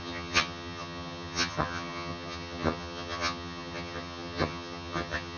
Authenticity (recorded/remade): remade